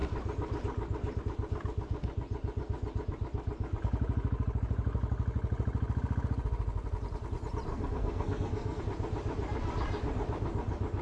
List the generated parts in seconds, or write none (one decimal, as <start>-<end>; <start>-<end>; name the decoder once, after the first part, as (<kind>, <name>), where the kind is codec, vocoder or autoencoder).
7.7-8.8 (codec, SNAC)

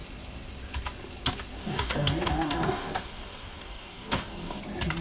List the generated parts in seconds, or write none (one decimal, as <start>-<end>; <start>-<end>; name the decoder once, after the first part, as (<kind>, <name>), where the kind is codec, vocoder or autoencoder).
1.6-4.6 (codec, DAC)

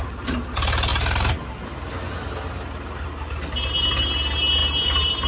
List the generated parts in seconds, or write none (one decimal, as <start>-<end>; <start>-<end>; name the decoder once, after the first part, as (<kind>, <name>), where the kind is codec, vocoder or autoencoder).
none

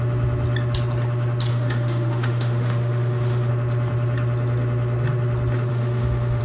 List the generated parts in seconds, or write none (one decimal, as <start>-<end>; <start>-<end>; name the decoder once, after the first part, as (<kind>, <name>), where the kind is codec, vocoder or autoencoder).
1.5-3.5 (autoencoder, DAC-VAE); 5.7-6.4